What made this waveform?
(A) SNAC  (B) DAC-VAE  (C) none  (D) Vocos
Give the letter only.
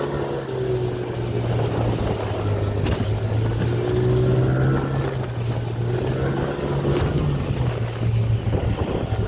C